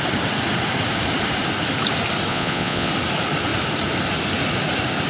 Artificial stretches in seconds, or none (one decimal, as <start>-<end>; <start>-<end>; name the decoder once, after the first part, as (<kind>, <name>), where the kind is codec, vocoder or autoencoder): 2.3-2.9 (vocoder, Vocos)